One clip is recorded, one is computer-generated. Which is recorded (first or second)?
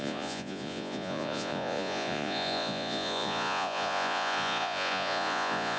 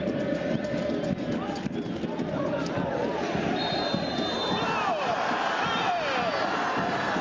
second